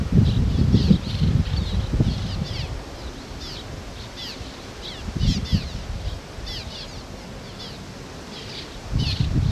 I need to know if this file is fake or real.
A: real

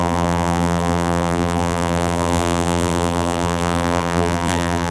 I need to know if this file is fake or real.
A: fake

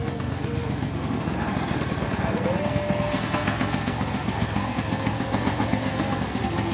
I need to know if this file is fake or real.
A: fake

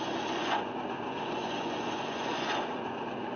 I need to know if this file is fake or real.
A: fake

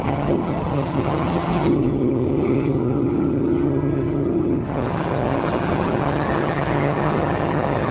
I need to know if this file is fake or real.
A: fake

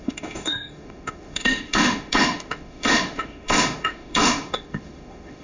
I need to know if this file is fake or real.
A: fake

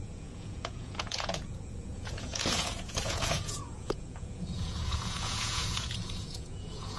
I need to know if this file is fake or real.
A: fake